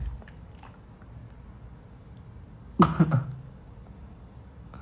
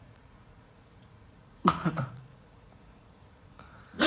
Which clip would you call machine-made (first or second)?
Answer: second